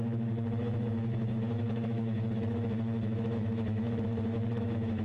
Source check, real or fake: fake